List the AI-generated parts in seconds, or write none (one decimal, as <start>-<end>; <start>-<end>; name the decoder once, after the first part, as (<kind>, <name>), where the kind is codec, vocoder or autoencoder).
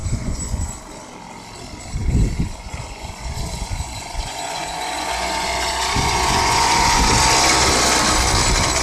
0.0-0.7 (vocoder, Vocos); 2.0-7.1